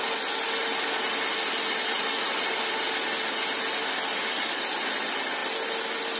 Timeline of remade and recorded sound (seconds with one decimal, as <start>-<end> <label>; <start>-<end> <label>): 0.0-6.2 recorded